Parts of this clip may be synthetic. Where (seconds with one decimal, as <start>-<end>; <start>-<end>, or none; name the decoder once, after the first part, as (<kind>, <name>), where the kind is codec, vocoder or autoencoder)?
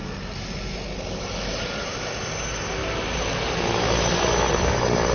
none